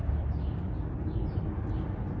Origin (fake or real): real